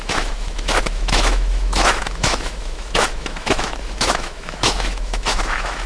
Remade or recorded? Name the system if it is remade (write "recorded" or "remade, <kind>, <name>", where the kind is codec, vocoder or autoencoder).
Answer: remade, autoencoder, DAC-VAE